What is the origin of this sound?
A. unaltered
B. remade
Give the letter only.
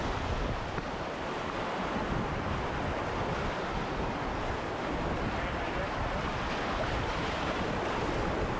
A